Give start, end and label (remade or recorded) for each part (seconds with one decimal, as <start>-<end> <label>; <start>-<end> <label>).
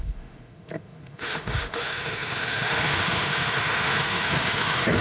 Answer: 0.0-5.0 remade